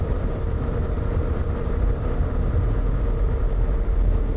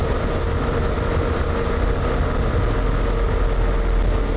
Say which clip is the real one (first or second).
second